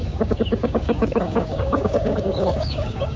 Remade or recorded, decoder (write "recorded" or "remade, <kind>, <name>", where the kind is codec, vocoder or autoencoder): remade, codec, DAC